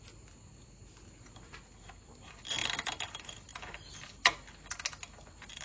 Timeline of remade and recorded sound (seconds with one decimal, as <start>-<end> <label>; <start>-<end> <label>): 0.0-5.6 recorded